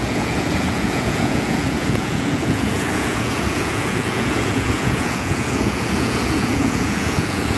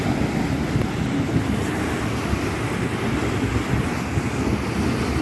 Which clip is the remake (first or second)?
first